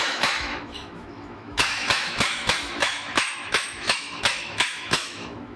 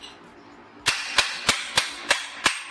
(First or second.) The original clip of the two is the second